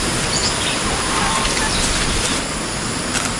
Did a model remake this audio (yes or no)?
no